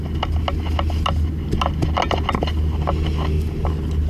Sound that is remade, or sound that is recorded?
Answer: recorded